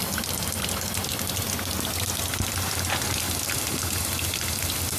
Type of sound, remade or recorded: recorded